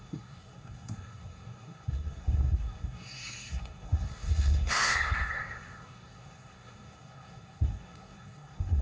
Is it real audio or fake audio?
fake